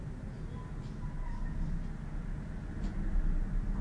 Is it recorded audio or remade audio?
recorded